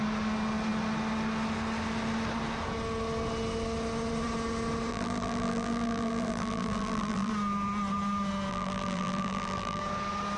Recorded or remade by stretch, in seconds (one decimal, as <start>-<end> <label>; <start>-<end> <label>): 0.0-4.9 recorded; 4.9-7.3 remade; 7.3-8.5 recorded; 8.5-9.8 remade; 9.8-10.4 recorded